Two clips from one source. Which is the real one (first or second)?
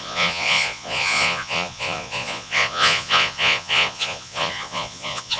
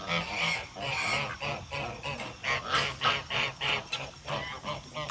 second